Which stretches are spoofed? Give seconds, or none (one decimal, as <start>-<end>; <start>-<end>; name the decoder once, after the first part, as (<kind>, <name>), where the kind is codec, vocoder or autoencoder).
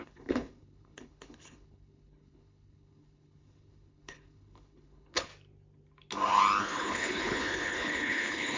0.0-5.3 (codec, HILCodec); 6.6-8.6